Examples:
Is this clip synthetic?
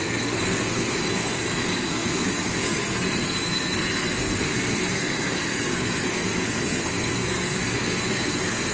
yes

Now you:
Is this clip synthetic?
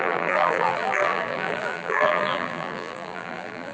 yes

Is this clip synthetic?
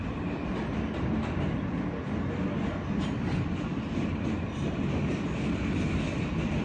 no